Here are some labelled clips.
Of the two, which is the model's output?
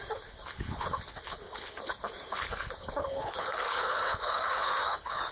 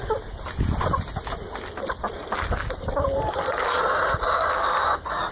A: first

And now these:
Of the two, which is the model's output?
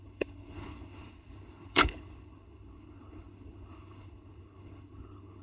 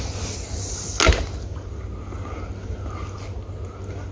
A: first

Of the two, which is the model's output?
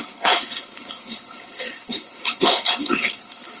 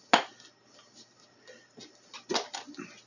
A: first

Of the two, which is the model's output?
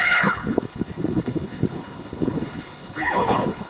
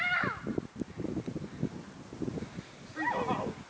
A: first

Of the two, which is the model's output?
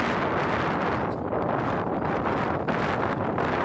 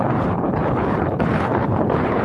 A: second